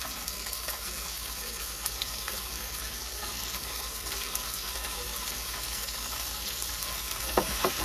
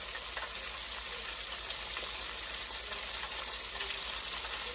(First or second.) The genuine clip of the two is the second